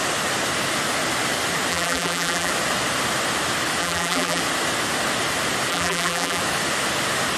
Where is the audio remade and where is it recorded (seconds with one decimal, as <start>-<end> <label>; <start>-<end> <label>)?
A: 0.0-1.7 recorded; 1.7-2.5 remade; 2.5-3.8 recorded; 3.8-4.4 remade; 4.4-5.7 recorded; 5.7-6.4 remade; 6.4-7.4 recorded